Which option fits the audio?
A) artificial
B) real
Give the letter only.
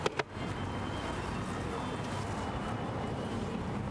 B